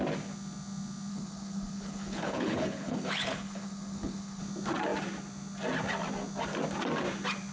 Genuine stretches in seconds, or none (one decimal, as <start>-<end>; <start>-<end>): 0.0-1.1; 4.4-7.5